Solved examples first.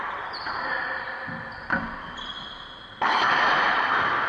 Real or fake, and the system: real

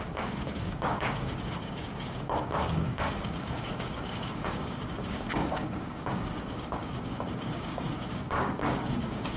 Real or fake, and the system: fake, codec, DAC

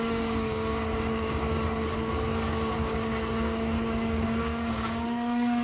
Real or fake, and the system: fake, codec, DAC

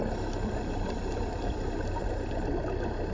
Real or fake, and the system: real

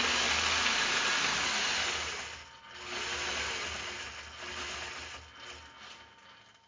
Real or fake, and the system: real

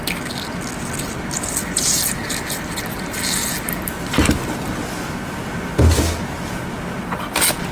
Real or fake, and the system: real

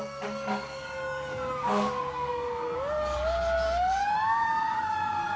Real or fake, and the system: fake, codec, DAC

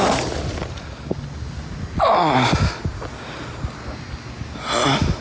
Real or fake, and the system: real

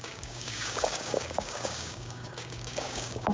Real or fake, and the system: fake, codec, DAC